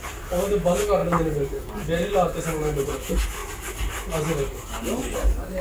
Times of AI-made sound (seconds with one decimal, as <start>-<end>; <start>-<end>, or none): none